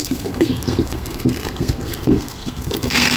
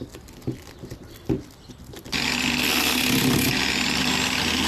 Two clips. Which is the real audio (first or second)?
second